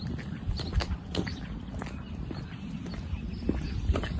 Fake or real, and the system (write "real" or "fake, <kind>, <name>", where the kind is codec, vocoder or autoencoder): fake, vocoder, BigVGAN v2